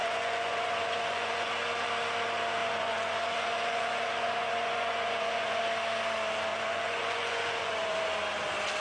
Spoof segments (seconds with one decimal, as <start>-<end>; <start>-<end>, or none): 0.0-1.5; 2.6-5.6; 6.5-8.0